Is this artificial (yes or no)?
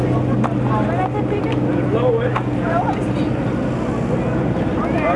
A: no